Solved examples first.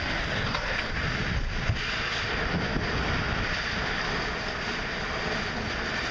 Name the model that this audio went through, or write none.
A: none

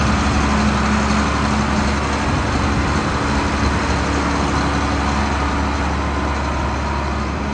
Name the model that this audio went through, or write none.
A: none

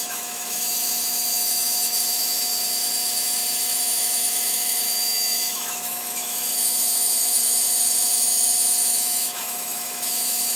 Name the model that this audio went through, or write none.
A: autoencoder, DAC-VAE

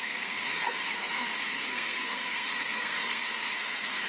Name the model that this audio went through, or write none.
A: codec, SNAC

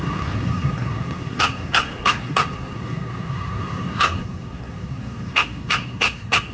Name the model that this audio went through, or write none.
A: codec, SNAC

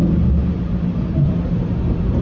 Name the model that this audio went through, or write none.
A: none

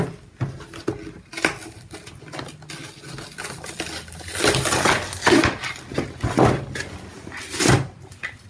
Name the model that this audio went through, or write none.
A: none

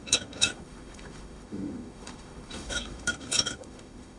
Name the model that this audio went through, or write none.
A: autoencoder, DAC-VAE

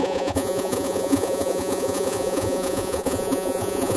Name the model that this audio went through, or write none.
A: vocoder, Vocos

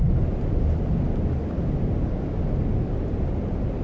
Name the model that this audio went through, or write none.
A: none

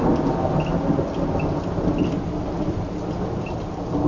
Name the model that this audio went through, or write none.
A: none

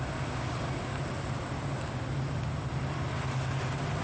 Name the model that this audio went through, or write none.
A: none